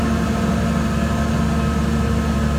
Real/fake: real